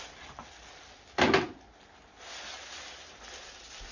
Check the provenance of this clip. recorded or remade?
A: recorded